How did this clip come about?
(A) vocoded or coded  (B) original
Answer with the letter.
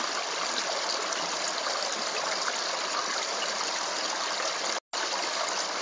B